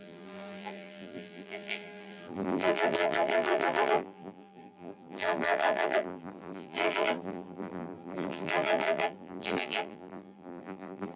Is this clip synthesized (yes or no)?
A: yes